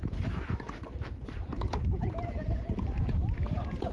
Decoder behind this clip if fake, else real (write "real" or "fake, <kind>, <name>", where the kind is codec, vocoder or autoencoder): fake, vocoder, BigVGAN v2